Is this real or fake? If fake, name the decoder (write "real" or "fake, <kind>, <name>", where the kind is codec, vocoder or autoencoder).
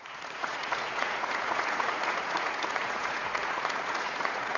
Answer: fake, vocoder, Vocos